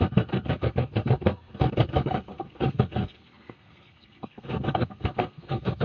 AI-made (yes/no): yes